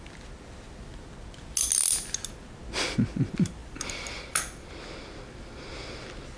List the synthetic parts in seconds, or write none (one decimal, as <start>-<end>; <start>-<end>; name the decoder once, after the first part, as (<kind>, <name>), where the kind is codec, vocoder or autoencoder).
3.6-4.7 (vocoder, BigVGAN v2)

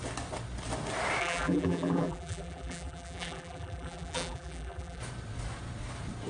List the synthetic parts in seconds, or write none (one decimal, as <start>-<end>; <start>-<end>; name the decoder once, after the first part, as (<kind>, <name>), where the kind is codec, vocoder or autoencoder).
1.2-5.0 (vocoder, BigVGAN v2)

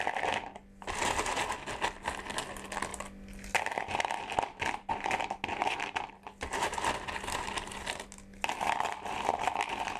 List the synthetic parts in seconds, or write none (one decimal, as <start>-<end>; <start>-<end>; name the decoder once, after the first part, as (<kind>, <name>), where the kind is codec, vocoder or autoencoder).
none

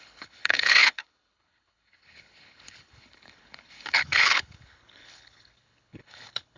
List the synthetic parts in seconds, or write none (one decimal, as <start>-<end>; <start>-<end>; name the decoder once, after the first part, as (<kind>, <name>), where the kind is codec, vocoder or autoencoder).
0.0-6.6 (codec, HILCodec)

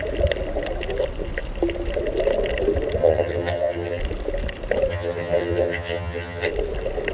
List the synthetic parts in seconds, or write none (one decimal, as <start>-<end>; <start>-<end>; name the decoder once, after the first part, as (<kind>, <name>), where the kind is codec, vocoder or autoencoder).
3.0-4.0 (vocoder, HiFi-GAN); 4.9-6.5

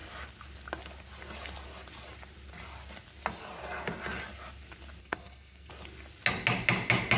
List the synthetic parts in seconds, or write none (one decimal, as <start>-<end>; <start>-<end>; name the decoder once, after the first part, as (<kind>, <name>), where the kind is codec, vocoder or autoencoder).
5.0-5.7 (codec, SNAC)

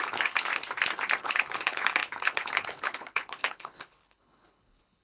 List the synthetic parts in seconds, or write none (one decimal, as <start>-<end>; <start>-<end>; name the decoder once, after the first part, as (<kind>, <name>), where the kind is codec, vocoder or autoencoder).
0.0-0.5 (codec, HILCodec); 1.2-5.0

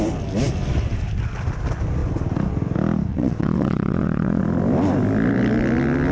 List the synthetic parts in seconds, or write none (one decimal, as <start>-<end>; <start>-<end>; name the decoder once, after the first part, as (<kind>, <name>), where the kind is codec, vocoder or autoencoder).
3.1-4.4 (vocoder, WaveNeXt)